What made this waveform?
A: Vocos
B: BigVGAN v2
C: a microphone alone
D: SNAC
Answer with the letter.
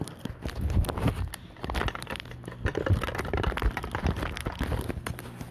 C